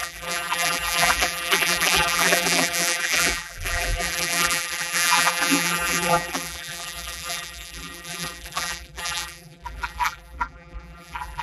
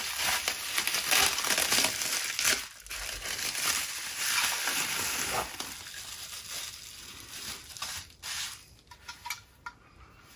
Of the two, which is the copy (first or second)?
first